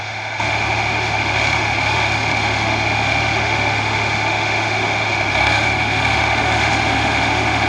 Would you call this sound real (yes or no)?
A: no